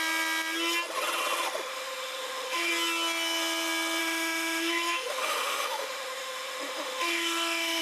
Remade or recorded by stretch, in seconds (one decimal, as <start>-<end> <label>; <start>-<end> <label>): 0.0-1.7 recorded; 1.7-2.7 remade; 2.7-4.0 recorded; 4.0-7.8 remade